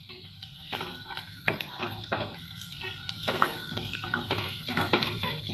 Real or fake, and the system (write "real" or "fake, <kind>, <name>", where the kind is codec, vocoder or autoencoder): fake, codec, SNAC